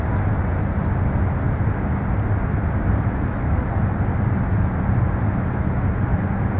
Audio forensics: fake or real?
real